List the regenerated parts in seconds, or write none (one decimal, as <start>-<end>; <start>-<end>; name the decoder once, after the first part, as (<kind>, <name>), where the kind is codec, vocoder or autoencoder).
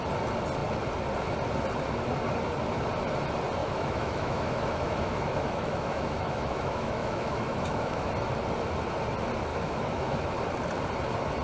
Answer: 3.6-8.1 (autoencoder, DAC-VAE); 9.5-10.2